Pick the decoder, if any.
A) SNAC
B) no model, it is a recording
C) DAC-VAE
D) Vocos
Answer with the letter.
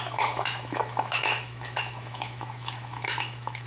C